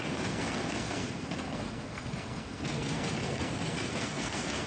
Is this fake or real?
fake